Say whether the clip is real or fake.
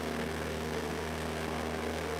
fake